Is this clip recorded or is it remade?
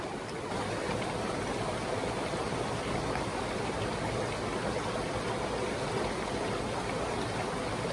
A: recorded